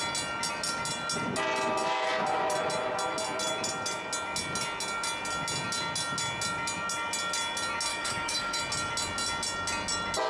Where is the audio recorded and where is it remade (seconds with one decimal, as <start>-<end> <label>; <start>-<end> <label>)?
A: 0.0-7.9 recorded; 7.9-8.6 remade; 8.6-10.3 recorded